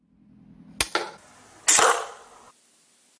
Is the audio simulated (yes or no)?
no